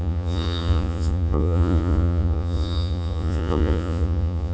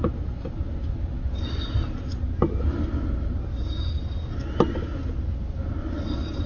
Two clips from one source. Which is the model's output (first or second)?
first